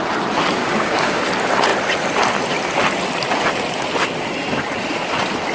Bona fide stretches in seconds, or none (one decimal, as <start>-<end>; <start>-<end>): 0.0-0.6; 1.2-5.5